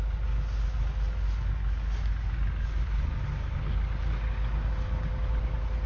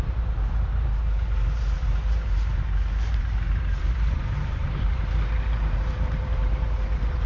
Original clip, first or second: first